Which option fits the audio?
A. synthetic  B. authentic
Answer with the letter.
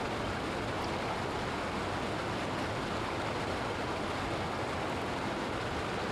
B